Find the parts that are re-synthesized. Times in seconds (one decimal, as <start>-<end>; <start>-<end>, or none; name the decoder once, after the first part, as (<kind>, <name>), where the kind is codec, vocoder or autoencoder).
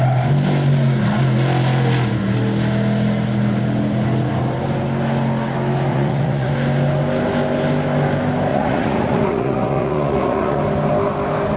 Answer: 5.9-6.5 (vocoder, Vocos); 8.5-10.6